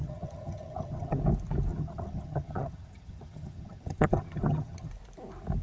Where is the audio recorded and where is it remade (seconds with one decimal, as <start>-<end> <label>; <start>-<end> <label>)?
0.0-1.2 remade; 1.2-1.7 recorded; 1.7-4.9 remade; 4.9-5.6 recorded